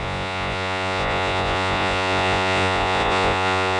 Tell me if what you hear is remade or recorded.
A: remade